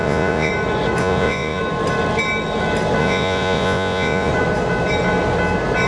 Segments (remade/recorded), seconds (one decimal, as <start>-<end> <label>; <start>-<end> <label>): 0.0-0.5 remade; 0.5-1.0 recorded; 1.0-1.6 remade; 1.6-3.0 recorded; 3.0-4.3 remade; 4.3-5.9 recorded